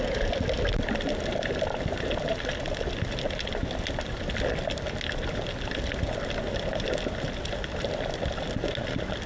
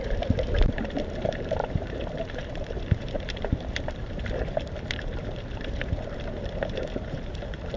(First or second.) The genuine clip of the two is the first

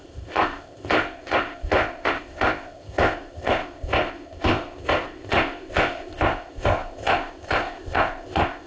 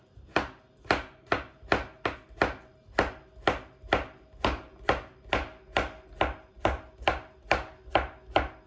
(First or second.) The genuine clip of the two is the second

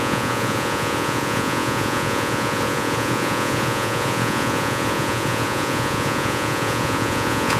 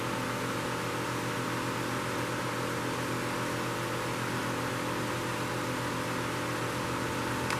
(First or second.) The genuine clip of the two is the second